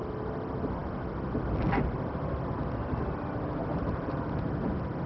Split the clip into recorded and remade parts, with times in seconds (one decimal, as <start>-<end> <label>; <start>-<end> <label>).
0.0-3.7 recorded; 3.7-4.2 remade; 4.2-5.1 recorded